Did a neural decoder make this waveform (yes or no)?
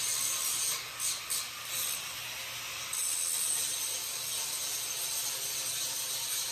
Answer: no